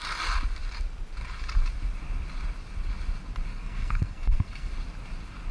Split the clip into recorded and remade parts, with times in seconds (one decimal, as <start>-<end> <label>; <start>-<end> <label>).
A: 0.0-3.5 recorded; 3.5-4.7 remade; 4.7-5.5 recorded